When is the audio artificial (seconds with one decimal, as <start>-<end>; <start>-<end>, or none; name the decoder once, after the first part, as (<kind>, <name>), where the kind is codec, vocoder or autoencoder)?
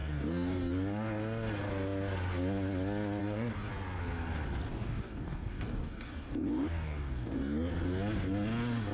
0.0-0.7 (codec, DAC); 3.2-3.7; 4.7-7.7